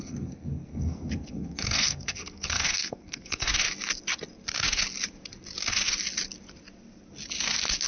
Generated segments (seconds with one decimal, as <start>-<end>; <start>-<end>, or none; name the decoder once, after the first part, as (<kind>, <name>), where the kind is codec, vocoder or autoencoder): 0.0-3.5 (codec, SNAC)